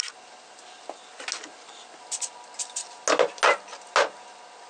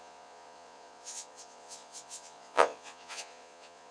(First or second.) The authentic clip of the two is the first